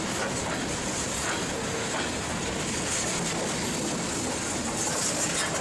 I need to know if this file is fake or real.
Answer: real